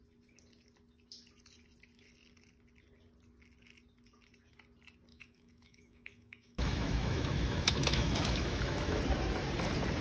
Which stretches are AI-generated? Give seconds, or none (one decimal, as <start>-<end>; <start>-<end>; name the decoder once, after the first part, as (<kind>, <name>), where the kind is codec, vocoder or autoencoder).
5.1-9.0 (autoencoder, DAC-VAE)